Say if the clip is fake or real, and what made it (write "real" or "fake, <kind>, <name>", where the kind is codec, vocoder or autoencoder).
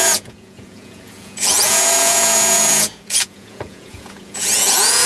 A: fake, vocoder, Vocos